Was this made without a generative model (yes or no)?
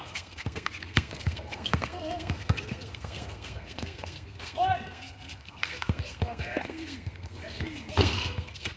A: no